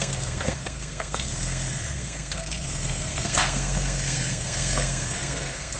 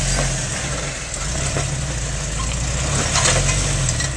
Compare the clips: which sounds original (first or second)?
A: second